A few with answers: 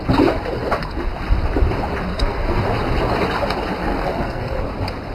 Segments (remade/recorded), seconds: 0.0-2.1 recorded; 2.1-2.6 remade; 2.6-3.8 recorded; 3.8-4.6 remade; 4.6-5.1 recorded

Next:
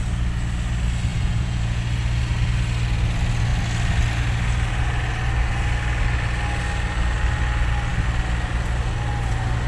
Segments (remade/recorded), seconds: 0.0-1.1 recorded; 1.1-1.8 remade; 1.8-9.7 recorded

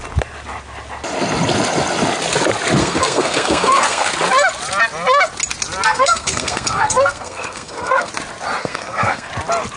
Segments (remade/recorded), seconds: 0.0-2.8 recorded; 2.8-4.1 remade; 4.1-5.9 recorded; 5.9-8.1 remade; 8.1-8.6 recorded; 8.6-9.3 remade; 9.3-9.8 recorded

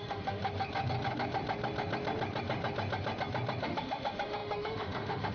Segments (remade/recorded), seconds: 0.0-0.4 remade; 0.4-3.6 recorded; 3.6-5.3 remade

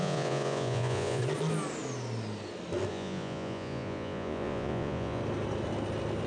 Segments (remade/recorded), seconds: 0.0-1.2 remade; 1.2-2.9 recorded; 2.9-5.2 remade; 5.2-6.3 recorded

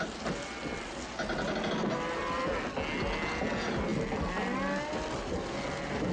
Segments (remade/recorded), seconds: 0.0-6.1 recorded

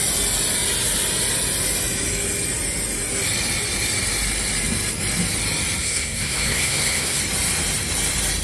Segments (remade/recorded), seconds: 0.0-5.8 recorded; 5.8-7.2 remade; 7.2-8.4 recorded